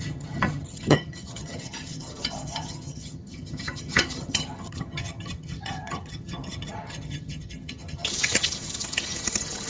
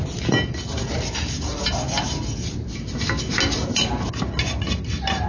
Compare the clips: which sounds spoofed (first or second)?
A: first